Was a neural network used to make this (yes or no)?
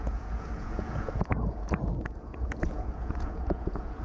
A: yes